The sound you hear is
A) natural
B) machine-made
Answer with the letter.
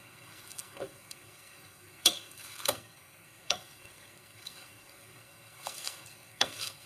B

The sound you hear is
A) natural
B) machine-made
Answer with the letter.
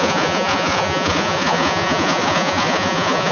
B